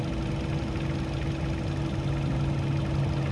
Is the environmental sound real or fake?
real